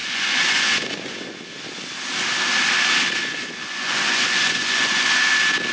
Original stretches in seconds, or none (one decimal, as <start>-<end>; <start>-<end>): 1.4-3.2; 5.3-5.7